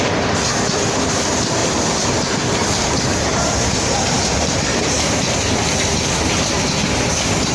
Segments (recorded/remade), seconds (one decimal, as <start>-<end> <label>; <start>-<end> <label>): 0.0-1.6 recorded; 1.6-6.1 remade; 6.1-7.5 recorded